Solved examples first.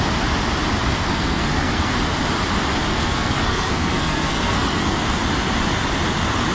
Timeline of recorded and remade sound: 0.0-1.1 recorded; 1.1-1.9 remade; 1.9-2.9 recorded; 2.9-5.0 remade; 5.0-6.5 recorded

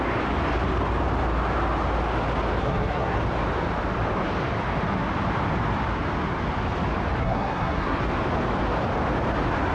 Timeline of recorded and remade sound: 0.0-2.6 recorded; 2.6-3.2 remade; 3.2-7.2 recorded; 7.2-8.0 remade; 8.0-9.7 recorded

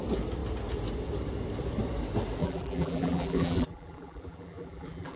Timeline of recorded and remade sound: 0.0-2.4 recorded; 2.4-5.2 remade

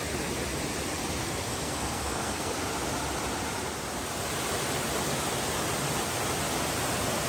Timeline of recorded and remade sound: 0.0-1.2 recorded; 1.2-2.5 remade; 2.5-7.3 recorded

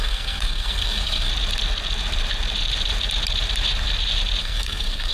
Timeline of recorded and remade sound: 0.0-1.3 remade; 1.3-4.4 recorded; 4.4-5.1 remade

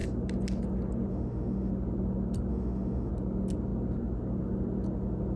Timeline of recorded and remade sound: 0.0-1.1 recorded; 1.1-1.7 remade; 1.7-2.5 recorded; 2.5-3.1 remade; 3.1-5.4 recorded

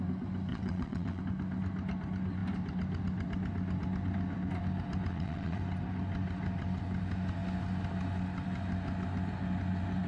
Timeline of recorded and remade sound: 0.0-0.5 recorded; 0.5-1.2 remade; 1.2-5.1 recorded; 5.1-5.6 remade; 5.6-10.1 recorded